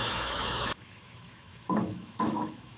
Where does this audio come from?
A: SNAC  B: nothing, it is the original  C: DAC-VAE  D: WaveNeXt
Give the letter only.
C